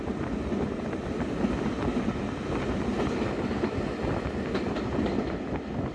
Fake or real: real